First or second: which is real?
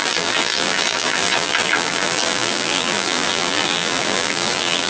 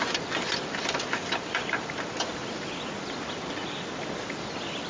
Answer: second